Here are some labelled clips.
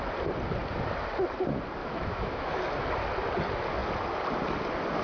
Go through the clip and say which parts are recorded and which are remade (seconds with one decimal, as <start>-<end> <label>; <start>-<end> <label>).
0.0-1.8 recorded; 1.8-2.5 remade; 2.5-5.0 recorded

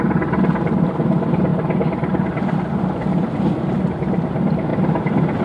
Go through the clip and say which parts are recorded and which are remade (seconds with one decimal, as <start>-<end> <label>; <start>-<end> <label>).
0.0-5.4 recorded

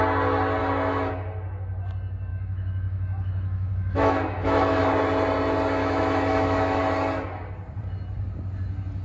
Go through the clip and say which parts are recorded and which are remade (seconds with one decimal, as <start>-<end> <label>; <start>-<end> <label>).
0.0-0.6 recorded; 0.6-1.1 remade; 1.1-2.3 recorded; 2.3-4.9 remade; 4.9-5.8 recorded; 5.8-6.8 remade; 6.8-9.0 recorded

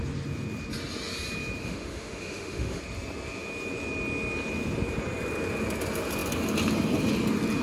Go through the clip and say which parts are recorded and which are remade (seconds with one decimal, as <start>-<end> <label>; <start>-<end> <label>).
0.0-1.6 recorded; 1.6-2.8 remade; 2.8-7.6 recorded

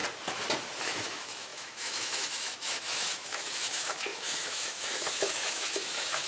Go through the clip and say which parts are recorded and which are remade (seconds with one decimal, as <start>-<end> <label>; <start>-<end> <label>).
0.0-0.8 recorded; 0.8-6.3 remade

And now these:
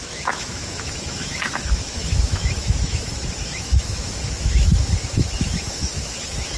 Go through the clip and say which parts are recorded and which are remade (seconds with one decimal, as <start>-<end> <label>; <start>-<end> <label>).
0.0-6.6 remade

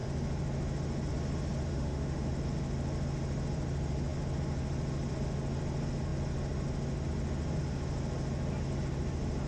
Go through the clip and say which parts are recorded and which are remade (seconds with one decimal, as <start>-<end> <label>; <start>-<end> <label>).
0.0-1.7 recorded; 1.7-2.3 remade; 2.3-9.5 recorded

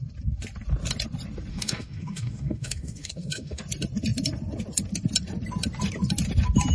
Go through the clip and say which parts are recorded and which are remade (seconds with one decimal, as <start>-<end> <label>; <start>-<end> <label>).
0.0-1.5 recorded; 1.5-3.6 remade; 3.6-6.7 recorded